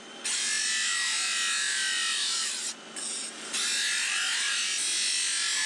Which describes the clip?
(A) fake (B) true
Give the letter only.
B